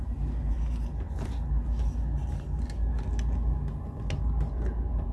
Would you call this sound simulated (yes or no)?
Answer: no